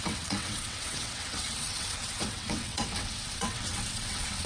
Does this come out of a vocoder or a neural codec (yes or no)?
yes